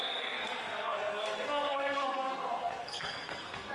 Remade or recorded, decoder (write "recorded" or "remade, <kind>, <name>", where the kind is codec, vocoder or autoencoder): remade, codec, SNAC